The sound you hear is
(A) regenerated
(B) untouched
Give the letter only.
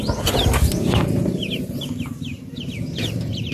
B